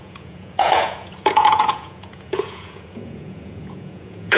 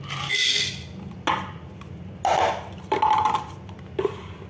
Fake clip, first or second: first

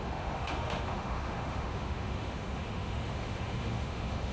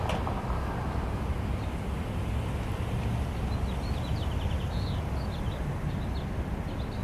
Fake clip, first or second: first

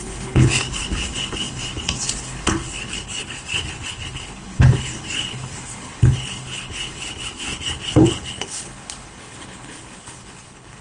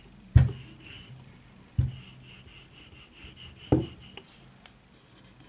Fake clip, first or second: first